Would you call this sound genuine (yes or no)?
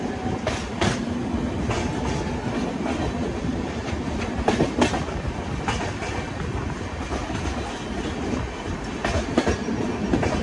yes